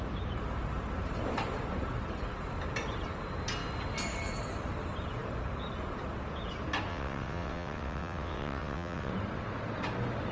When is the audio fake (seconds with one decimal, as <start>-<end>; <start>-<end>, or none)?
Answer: 6.9-9.1